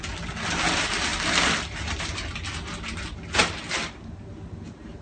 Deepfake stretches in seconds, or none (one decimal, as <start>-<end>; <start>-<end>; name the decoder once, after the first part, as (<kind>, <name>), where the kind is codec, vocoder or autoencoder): none